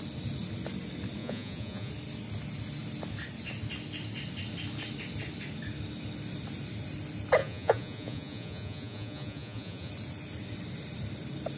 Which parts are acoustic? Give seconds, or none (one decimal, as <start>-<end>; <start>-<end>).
0.0-1.2; 1.9-7.4; 9.9-11.6